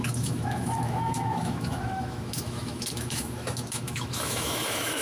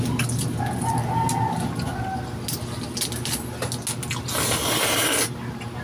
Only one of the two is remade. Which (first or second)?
first